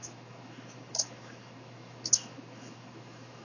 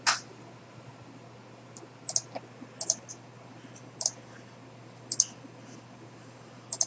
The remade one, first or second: first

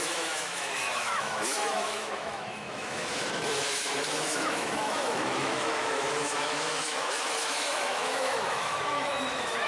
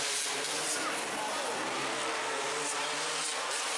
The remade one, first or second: first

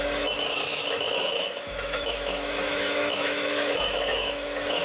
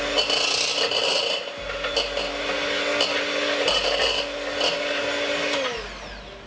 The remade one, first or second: first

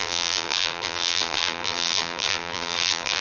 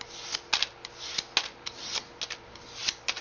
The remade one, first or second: first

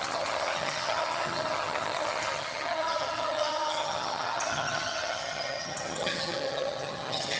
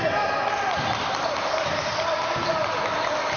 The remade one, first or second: first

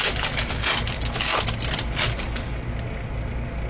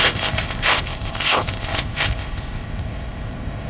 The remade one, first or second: second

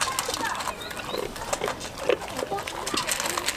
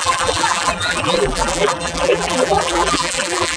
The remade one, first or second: second